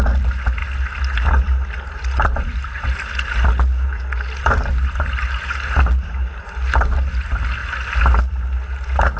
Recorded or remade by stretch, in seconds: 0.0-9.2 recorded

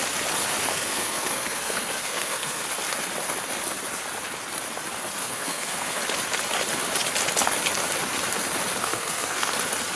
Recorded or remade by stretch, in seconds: 0.0-0.7 recorded; 0.7-2.6 remade; 2.6-5.2 recorded; 5.2-6.0 remade; 6.0-8.8 recorded; 8.8-9.5 remade; 9.5-10.0 recorded

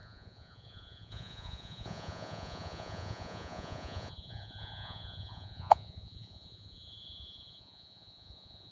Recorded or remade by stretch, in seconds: 0.0-8.7 remade

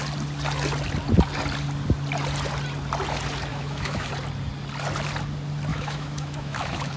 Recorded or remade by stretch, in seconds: 0.0-3.5 recorded; 3.5-4.1 remade; 4.1-5.7 recorded; 5.7-7.0 remade

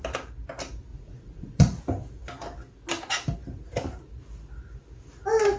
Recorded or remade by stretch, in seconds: 0.0-0.9 recorded; 0.9-1.8 remade; 1.8-5.6 recorded